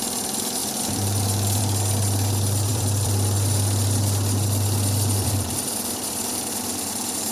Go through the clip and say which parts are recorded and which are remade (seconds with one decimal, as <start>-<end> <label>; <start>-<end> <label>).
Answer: 0.0-0.6 recorded; 0.6-1.6 remade; 1.6-2.7 recorded; 2.7-7.3 remade